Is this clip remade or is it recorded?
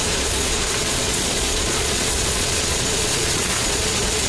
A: remade